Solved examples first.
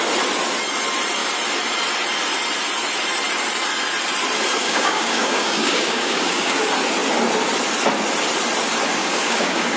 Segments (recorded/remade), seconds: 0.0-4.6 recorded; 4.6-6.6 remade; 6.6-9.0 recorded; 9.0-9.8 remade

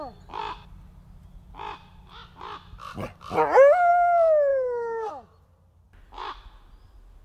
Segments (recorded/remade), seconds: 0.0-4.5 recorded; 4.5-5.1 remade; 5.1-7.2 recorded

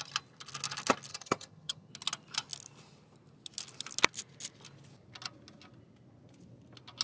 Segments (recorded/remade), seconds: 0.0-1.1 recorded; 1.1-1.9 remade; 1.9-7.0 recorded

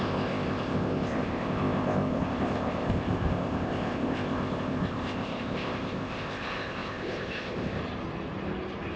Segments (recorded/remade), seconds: 0.0-7.8 remade; 7.8-9.0 recorded

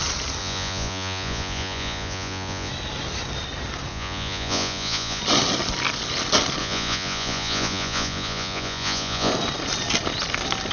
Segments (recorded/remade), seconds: 0.0-0.4 recorded; 0.4-2.7 remade; 2.7-3.9 recorded; 3.9-5.2 remade; 5.2-6.6 recorded; 6.6-9.3 remade; 9.3-10.7 recorded